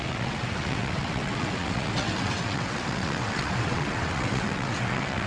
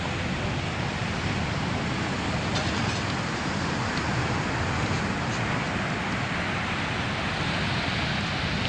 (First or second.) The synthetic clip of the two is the first